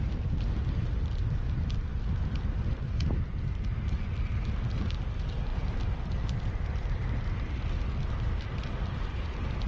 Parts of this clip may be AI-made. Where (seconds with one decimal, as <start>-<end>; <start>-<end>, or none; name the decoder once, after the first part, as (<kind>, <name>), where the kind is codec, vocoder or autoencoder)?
none